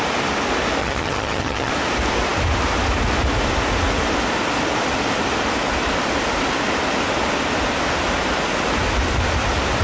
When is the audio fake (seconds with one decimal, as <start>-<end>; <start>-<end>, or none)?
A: 0.8-1.7